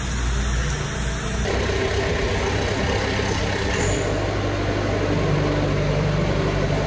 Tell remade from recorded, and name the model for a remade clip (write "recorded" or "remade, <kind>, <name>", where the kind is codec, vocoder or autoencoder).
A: recorded